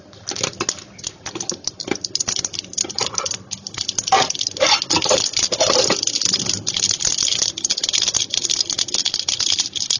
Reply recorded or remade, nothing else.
recorded